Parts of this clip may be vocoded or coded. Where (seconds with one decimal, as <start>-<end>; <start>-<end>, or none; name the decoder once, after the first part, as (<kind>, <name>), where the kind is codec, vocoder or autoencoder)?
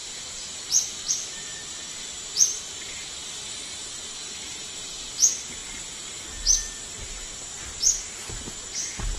0.0-5.6 (vocoder, BigVGAN v2); 7.0-9.2